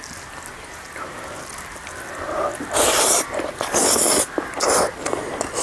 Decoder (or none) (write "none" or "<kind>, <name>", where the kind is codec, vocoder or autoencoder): none